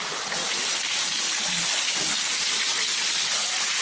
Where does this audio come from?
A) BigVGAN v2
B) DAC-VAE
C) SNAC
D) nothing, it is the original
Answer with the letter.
D